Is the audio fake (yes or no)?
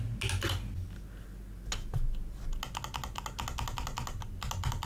no